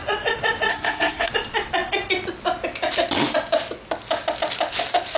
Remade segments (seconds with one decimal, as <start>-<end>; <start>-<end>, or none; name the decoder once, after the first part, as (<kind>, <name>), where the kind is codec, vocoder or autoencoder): 0.7-1.3 (codec, SNAC)